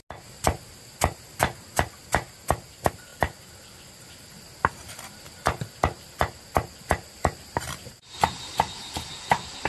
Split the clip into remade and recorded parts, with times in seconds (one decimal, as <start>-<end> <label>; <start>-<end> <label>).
0.0-1.4 recorded; 1.4-2.0 remade; 2.0-3.1 recorded; 3.1-8.0 remade; 8.0-9.7 recorded